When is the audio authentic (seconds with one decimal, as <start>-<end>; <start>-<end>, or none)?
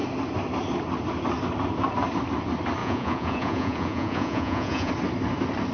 0.0-2.8; 4.9-5.7